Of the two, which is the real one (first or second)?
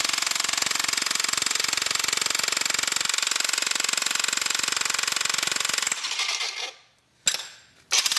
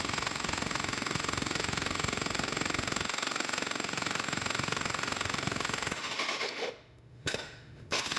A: first